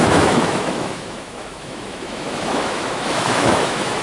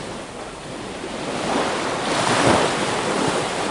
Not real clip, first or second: first